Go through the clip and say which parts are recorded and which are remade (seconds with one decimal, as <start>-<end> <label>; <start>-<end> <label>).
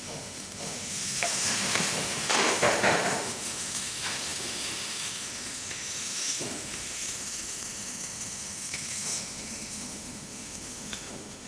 0.0-11.5 remade